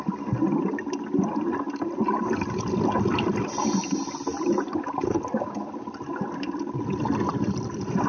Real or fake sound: real